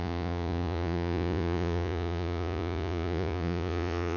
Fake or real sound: fake